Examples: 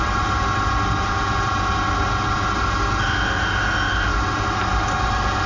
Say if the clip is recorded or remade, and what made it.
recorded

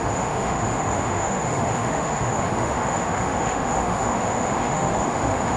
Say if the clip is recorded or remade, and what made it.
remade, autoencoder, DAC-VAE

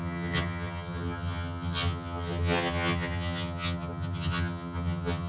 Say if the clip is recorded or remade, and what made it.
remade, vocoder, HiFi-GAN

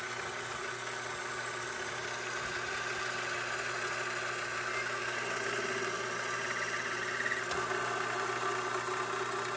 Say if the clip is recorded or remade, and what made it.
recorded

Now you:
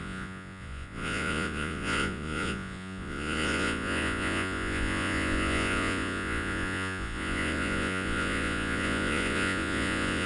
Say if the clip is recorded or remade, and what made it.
remade, vocoder, Vocos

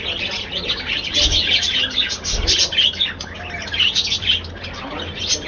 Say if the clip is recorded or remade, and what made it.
recorded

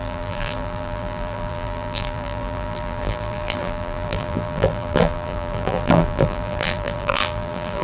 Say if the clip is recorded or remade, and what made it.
remade, vocoder, BigVGAN v2